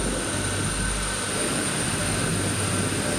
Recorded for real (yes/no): yes